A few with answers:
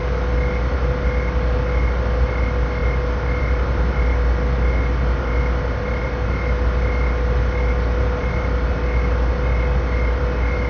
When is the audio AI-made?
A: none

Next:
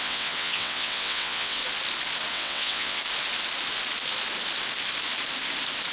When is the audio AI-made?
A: 0.0-1.6 (vocoder, WaveNeXt); 2.3-3.0